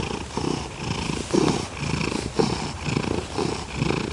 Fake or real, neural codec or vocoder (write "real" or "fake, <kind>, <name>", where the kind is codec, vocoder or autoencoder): real